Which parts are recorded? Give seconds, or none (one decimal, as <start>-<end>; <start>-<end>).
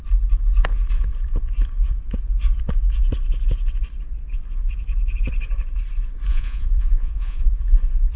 0.0-6.3; 7.6-8.2